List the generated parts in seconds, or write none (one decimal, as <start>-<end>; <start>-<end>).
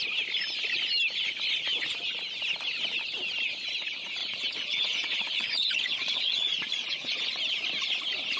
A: 4.2-7.4